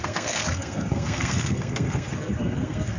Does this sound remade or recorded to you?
remade